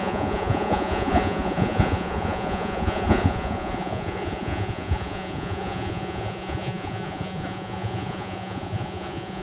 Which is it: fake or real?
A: fake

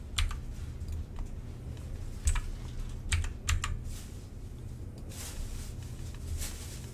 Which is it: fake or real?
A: real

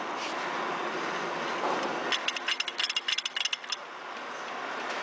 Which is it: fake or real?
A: real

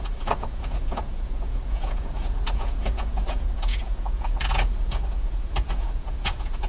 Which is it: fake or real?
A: fake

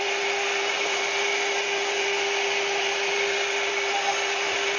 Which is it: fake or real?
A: real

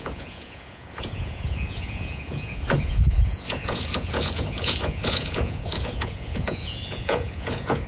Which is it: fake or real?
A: fake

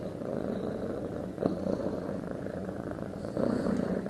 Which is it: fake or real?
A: fake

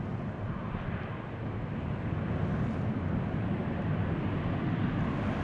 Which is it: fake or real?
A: real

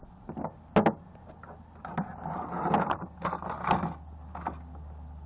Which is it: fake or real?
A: real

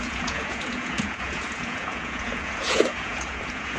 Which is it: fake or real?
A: fake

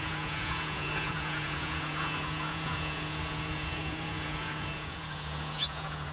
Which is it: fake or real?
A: fake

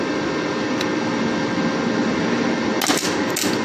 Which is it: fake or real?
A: real